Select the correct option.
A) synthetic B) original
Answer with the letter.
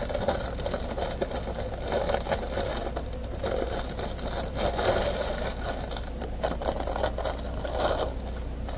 B